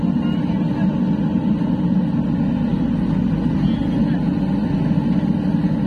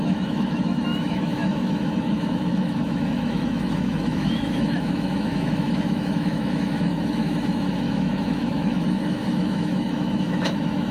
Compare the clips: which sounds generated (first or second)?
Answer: second